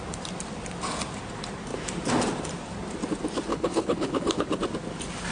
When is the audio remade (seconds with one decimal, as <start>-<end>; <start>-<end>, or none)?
3.5-4.6